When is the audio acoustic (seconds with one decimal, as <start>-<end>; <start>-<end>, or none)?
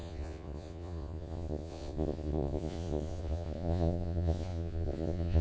none